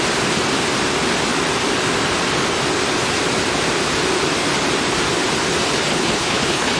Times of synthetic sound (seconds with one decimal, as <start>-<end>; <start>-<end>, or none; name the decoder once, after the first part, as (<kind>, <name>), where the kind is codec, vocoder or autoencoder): 5.9-6.8 (codec, HILCodec)